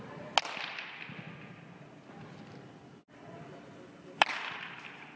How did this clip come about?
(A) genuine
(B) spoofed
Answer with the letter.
A